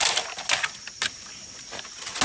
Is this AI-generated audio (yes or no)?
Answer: no